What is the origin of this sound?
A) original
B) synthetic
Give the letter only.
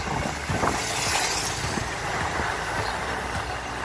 A